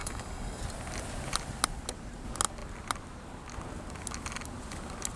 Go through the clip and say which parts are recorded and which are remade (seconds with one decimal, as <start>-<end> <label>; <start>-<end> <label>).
0.0-0.6 remade; 0.6-5.2 recorded